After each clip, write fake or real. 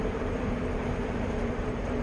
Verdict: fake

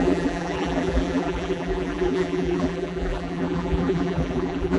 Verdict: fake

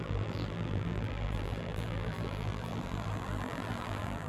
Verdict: fake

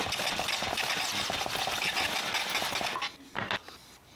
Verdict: real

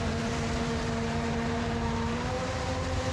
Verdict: fake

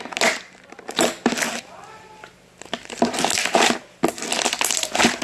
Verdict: real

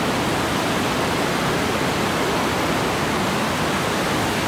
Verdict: real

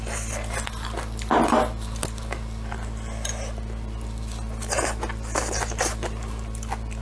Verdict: real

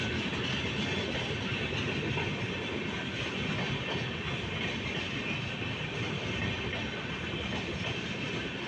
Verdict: real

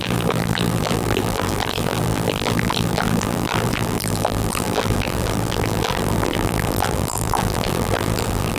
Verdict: fake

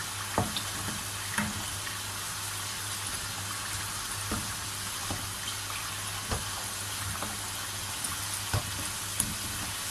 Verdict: real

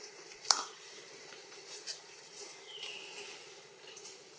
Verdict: fake